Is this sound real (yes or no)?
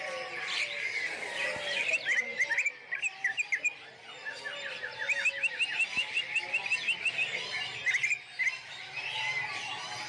yes